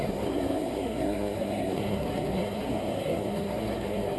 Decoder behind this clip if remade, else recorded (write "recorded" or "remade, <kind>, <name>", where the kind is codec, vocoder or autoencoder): remade, codec, SNAC